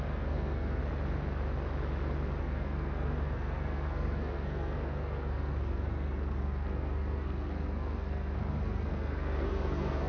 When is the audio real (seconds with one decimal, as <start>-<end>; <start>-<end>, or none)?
0.8-2.4